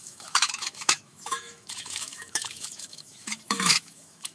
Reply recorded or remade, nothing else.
remade